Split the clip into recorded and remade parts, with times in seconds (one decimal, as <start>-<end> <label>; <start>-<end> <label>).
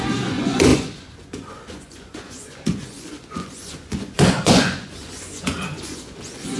0.0-6.6 remade